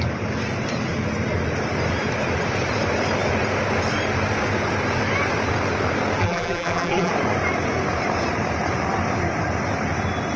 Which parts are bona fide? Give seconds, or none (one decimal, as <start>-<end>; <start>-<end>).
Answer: 0.0-6.2; 7.1-10.4